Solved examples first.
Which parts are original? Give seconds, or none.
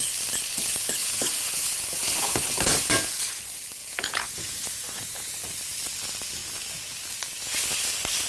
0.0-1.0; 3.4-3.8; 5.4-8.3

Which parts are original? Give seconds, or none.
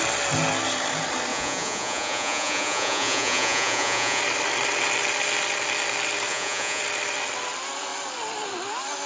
0.0-1.3; 4.2-6.3; 6.8-9.1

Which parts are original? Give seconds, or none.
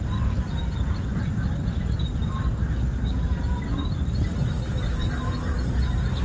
0.0-6.2